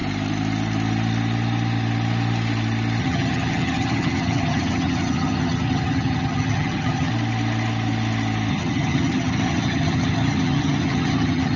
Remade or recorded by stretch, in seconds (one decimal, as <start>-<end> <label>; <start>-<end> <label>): 0.0-3.0 recorded; 3.0-7.1 remade; 7.1-8.5 recorded; 8.5-11.6 remade